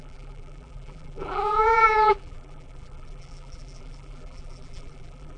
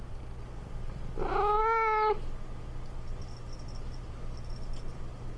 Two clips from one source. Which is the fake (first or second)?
first